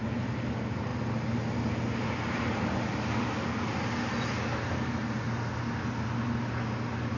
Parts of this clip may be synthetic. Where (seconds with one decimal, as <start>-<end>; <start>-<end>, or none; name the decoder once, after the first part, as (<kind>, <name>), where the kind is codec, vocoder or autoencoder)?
none